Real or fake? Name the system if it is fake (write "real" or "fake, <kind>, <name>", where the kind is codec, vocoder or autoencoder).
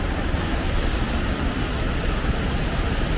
real